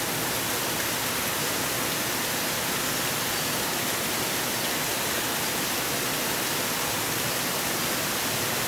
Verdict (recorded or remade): recorded